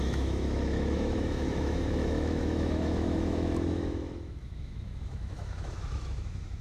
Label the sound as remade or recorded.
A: remade